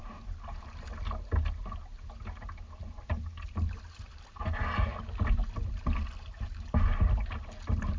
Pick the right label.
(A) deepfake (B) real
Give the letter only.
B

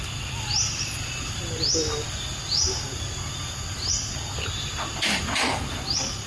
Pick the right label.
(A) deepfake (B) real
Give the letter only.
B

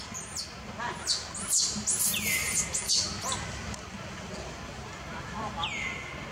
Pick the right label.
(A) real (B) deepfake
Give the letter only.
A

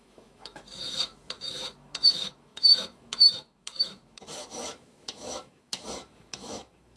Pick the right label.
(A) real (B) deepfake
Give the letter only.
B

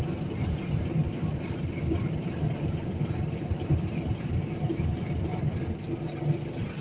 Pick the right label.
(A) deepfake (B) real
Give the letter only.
B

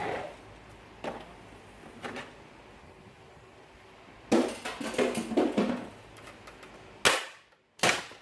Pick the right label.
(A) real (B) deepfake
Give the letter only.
A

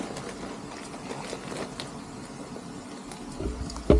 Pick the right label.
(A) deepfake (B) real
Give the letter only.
B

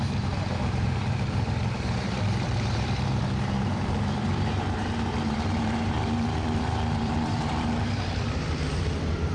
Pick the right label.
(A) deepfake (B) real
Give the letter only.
A